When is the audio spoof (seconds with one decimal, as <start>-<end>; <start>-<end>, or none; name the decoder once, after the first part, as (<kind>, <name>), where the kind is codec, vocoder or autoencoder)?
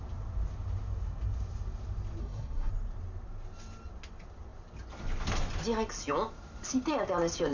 2.2-2.7 (codec, SNAC)